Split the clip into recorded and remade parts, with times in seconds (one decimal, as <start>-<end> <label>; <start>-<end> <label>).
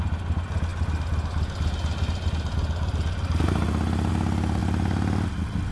0.0-5.7 recorded